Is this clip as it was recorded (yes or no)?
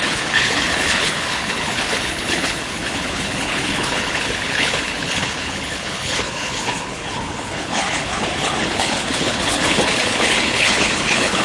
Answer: no